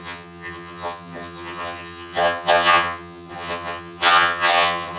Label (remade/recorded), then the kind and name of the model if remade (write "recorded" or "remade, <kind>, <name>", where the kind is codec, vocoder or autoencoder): remade, vocoder, HiFi-GAN